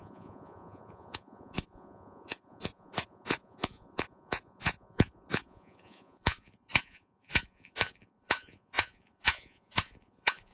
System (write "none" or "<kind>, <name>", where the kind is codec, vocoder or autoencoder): vocoder, Vocos